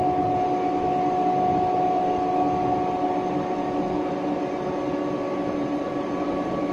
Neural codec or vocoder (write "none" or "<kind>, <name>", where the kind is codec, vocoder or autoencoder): none